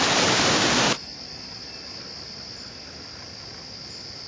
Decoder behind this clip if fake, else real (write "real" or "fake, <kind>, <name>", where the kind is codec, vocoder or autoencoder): real